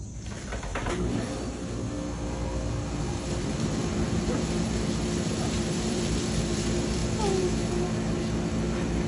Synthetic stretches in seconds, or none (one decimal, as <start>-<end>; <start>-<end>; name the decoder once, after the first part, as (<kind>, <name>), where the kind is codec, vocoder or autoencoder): 0.0-0.7 (vocoder, BigVGAN v2); 3.0-7.0